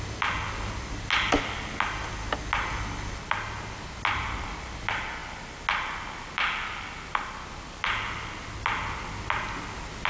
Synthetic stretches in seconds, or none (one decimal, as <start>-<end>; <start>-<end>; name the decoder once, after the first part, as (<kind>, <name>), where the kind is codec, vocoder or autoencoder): none